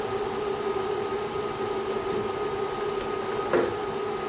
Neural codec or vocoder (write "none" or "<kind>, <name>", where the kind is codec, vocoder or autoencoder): none